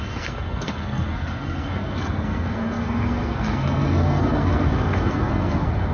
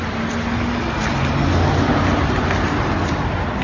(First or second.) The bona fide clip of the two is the second